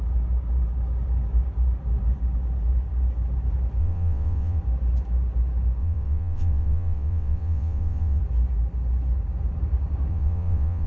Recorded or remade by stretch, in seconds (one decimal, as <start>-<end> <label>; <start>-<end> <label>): 0.0-3.8 recorded; 3.8-4.6 remade; 4.6-5.8 recorded; 5.8-8.2 remade; 8.2-10.1 recorded; 10.1-10.9 remade

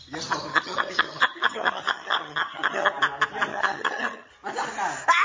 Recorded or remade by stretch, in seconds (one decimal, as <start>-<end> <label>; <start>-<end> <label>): 0.0-0.5 recorded; 0.5-2.9 remade; 2.9-3.5 recorded; 3.5-4.3 remade; 4.3-5.2 recorded

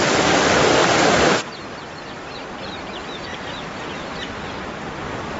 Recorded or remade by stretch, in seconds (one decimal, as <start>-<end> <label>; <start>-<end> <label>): 0.0-0.8 recorded; 0.8-1.6 remade; 1.6-3.3 recorded; 3.3-4.6 remade; 4.6-5.4 recorded

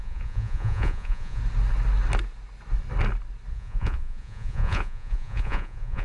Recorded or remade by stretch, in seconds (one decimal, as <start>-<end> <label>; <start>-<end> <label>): 0.0-1.4 remade; 1.4-3.5 recorded; 3.5-6.0 remade